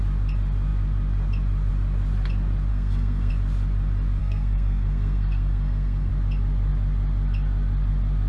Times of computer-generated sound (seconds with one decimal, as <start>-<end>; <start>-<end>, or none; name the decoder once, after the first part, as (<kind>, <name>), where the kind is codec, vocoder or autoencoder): 2.7-3.3 (codec, SNAC); 4.2-6.1